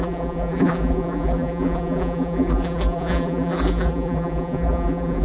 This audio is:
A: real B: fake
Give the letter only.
B